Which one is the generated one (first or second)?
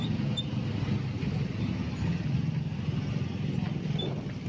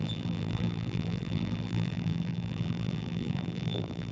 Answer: second